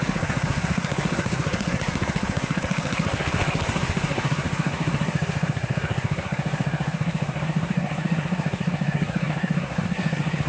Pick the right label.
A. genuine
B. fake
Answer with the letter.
B